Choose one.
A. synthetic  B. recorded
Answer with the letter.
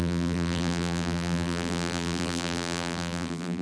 A